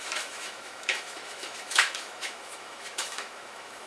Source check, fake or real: fake